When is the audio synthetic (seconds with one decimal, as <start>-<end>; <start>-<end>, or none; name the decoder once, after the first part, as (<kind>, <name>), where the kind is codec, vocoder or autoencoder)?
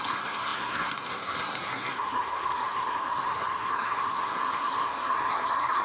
0.0-5.8 (codec, SNAC)